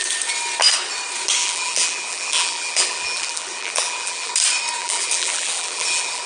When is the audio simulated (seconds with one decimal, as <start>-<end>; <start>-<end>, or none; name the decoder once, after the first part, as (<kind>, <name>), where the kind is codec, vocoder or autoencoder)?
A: 1.4-4.3 (vocoder, BigVGAN v2); 4.8-6.3